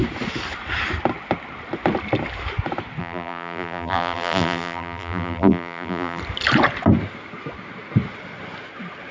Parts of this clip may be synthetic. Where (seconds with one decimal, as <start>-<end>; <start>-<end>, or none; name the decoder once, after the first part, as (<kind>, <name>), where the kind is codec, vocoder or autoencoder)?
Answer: 3.0-6.2 (vocoder, BigVGAN v2)